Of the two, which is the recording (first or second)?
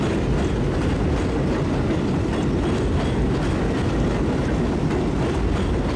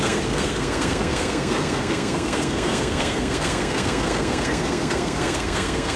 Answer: first